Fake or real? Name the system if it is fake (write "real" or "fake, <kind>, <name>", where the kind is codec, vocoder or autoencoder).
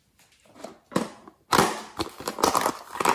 real